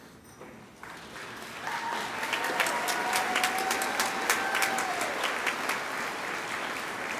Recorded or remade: recorded